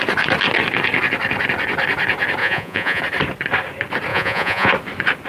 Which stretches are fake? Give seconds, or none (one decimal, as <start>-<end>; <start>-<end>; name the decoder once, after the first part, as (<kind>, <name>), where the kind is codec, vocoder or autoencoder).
2.4-3.0 (vocoder, Vocos); 4.1-4.7